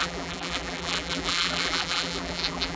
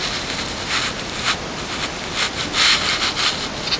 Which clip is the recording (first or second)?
second